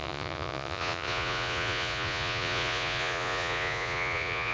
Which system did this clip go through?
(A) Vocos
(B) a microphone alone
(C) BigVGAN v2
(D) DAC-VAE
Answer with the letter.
A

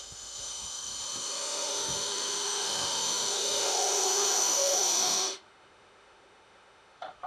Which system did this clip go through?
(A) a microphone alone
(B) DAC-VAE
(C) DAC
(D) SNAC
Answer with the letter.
B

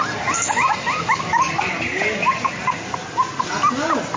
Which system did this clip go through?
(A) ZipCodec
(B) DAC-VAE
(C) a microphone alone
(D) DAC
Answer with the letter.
C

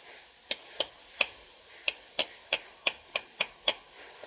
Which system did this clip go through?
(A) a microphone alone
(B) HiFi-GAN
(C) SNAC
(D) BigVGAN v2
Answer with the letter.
A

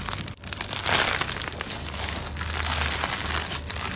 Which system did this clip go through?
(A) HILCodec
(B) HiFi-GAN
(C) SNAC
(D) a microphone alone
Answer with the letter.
D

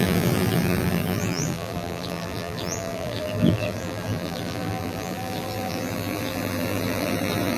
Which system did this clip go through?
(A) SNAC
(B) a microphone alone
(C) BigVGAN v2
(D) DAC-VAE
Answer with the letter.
C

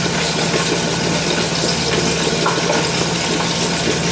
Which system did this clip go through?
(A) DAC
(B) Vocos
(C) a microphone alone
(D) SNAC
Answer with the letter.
C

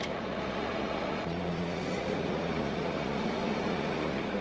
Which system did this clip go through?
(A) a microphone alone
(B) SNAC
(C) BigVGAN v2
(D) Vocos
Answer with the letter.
D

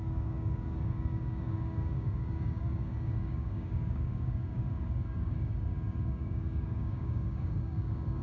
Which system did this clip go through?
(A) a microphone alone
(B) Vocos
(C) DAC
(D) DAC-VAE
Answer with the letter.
C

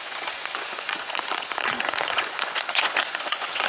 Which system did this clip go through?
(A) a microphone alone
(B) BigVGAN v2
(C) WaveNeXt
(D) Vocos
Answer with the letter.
D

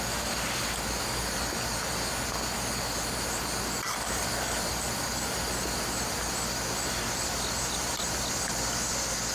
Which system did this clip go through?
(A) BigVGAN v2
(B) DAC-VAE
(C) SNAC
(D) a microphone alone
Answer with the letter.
D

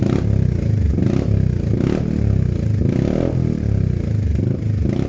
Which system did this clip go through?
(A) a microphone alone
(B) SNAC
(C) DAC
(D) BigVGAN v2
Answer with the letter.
A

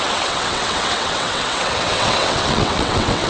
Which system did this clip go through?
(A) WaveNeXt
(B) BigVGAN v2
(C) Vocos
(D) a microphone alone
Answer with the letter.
A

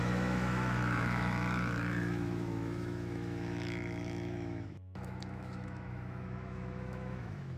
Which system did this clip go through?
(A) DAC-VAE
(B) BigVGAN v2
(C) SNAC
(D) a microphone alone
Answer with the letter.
A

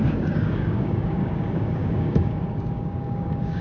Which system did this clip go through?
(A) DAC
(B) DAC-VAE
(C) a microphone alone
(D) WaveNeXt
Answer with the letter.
A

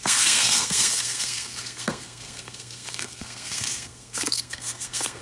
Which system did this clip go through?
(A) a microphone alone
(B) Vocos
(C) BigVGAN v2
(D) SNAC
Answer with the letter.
D